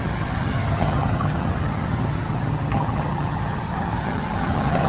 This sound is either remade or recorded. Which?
remade